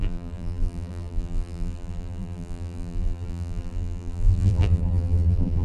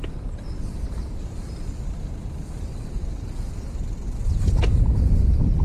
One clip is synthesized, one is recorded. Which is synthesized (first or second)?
first